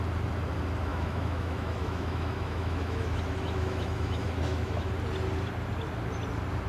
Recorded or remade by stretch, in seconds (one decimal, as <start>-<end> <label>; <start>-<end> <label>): 0.0-0.9 recorded; 0.9-4.9 remade; 4.9-6.7 recorded

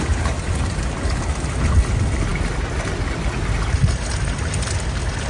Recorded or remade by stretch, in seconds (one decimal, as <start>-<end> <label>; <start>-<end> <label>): 0.0-5.3 recorded

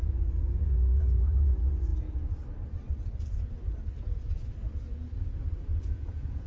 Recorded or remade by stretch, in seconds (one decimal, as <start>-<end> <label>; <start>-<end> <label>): 0.0-1.9 remade; 1.9-5.8 recorded; 5.8-6.5 remade

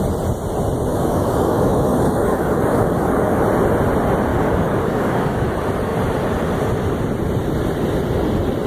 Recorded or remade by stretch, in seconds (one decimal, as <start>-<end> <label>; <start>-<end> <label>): 0.0-0.9 recorded; 0.9-3.4 remade; 3.4-4.3 recorded; 4.3-5.5 remade; 5.5-8.7 recorded

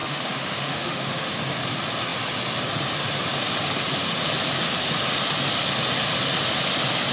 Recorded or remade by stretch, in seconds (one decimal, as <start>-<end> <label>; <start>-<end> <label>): 0.0-1.3 remade; 1.3-7.1 recorded

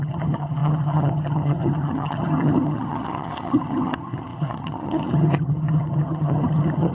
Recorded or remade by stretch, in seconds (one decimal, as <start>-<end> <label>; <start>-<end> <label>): 0.0-6.9 remade